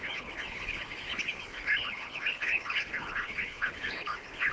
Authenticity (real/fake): fake